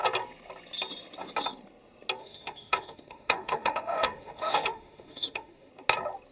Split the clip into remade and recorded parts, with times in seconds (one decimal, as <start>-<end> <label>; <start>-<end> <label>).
0.0-2.2 recorded; 2.2-5.7 remade; 5.7-6.3 recorded